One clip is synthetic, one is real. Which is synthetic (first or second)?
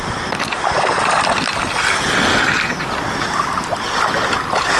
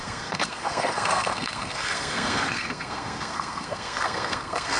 second